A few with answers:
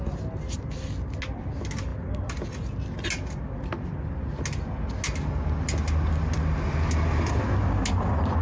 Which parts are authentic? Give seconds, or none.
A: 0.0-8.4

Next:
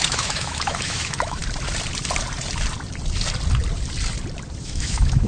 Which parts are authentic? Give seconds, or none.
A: 1.4-4.6

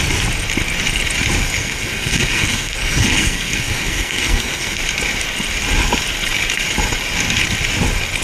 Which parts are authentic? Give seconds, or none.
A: 0.0-1.6; 4.8-8.2

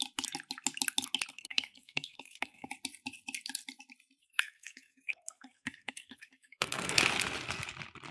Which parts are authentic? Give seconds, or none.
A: 0.0-1.3; 2.7-4.2; 7.0-8.1

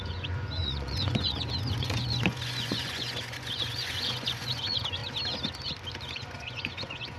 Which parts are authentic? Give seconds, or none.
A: 5.0-6.1